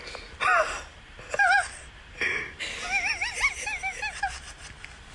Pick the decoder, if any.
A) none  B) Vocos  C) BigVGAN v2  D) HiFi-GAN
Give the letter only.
A